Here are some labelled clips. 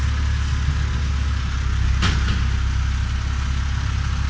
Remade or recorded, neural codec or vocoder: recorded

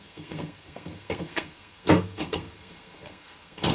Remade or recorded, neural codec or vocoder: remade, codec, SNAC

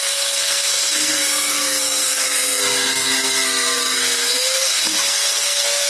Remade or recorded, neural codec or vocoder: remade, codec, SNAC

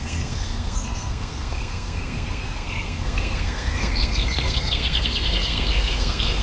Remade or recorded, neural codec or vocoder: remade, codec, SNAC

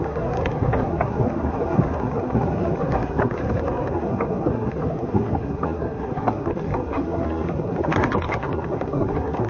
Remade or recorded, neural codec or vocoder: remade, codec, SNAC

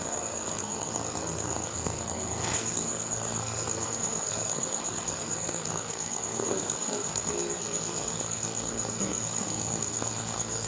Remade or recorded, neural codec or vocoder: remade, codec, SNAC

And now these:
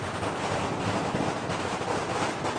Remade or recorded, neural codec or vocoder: recorded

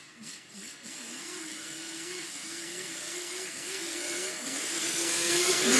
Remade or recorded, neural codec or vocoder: remade, codec, SNAC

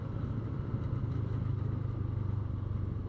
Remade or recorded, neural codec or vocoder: recorded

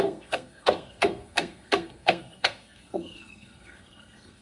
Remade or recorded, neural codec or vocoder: remade, codec, SNAC